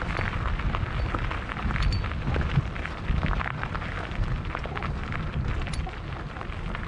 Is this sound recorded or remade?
recorded